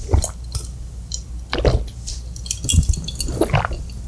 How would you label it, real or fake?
real